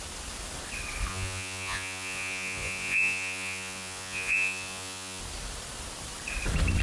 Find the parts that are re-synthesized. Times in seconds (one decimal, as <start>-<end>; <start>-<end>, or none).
1.1-5.2

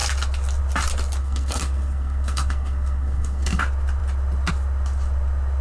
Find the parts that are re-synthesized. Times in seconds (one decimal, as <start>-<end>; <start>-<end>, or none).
1.2-3.6

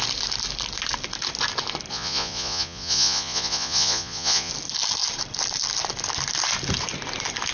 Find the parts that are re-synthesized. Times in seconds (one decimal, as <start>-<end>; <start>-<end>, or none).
1.9-4.5